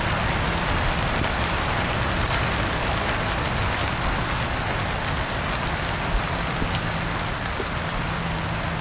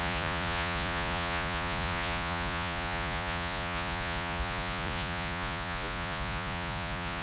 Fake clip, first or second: second